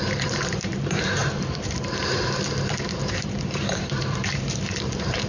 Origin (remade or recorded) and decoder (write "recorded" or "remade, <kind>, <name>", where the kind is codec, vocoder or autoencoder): remade, vocoder, BigVGAN v2